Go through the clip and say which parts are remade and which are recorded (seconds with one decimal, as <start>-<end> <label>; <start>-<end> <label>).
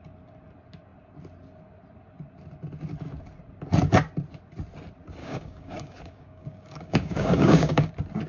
0.0-5.2 recorded; 5.2-7.9 remade; 7.9-8.3 recorded